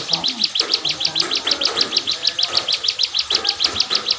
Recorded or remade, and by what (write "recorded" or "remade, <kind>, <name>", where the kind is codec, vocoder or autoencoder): recorded